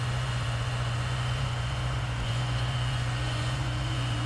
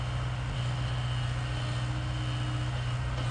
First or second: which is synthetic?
first